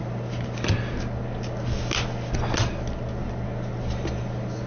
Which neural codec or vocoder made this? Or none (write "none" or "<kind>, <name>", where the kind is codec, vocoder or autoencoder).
none